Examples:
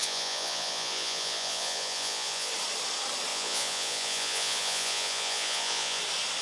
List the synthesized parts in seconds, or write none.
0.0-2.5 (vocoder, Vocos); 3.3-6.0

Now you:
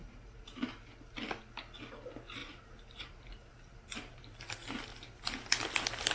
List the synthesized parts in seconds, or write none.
0.0-1.1 (vocoder, BigVGAN v2); 2.4-4.2; 4.9-5.5

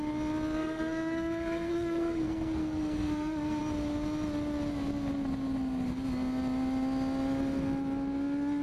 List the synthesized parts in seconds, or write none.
0.6-3.6 (codec, SNAC)

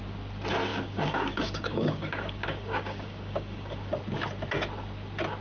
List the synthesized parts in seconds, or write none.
0.7-3.9 (codec, DAC)

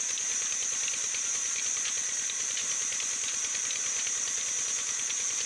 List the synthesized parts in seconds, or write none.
none

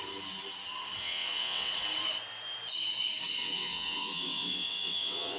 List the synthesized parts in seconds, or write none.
1.0-1.7 (vocoder, WaveNeXt); 3.4-5.4